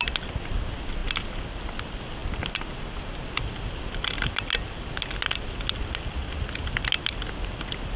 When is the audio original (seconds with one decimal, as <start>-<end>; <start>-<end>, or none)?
0.0-8.0